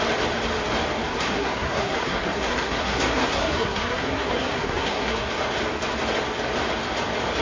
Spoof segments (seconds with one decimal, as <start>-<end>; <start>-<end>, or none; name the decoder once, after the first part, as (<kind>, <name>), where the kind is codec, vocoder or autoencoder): 1.1-5.3 (codec, SNAC)